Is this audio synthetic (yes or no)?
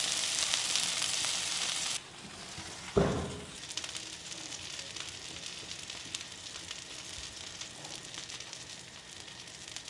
no